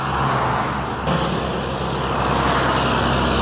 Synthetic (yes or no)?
no